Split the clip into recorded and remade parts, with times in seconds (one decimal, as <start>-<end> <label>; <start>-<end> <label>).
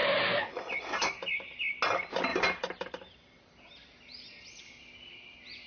0.0-5.7 recorded